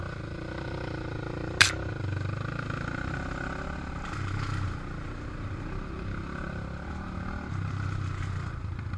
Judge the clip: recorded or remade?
recorded